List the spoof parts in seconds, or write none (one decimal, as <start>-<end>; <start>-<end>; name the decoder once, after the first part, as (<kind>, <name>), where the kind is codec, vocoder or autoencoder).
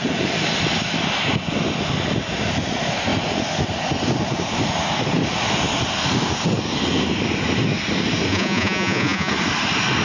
8.3-9.3 (vocoder, Vocos)